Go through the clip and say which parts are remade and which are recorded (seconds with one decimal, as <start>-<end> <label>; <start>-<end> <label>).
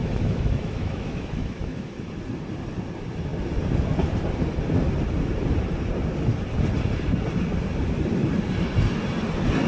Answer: 0.0-1.9 remade; 1.9-9.7 recorded